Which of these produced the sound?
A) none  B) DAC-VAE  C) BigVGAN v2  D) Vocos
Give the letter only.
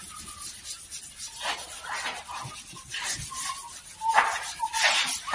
A